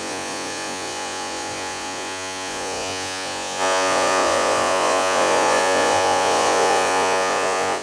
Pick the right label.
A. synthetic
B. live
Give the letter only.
A